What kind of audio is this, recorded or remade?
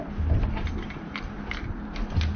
recorded